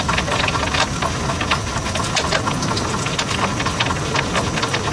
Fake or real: real